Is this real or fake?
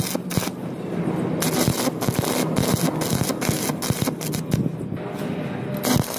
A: real